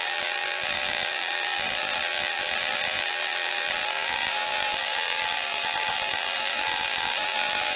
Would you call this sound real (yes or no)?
no